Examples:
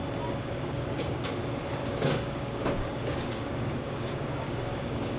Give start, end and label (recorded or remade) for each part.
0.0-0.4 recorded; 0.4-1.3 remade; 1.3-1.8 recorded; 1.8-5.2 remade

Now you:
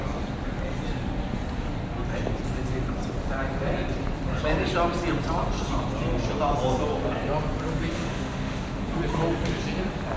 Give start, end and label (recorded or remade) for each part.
0.0-7.9 recorded; 7.9-8.8 remade; 8.8-10.2 recorded

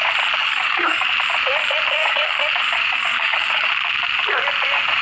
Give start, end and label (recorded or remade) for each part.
0.0-0.4 recorded; 0.4-1.1 remade; 1.1-2.0 recorded; 2.0-2.5 remade; 2.5-3.1 recorded; 3.1-3.7 remade; 3.7-5.0 recorded

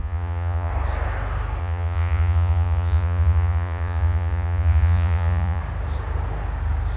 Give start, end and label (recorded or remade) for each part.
0.0-0.7 remade; 0.7-1.6 recorded; 1.6-5.6 remade; 5.6-7.0 recorded

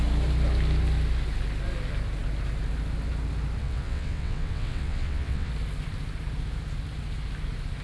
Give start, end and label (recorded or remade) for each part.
0.0-3.6 recorded; 3.6-5.5 remade; 5.5-7.8 recorded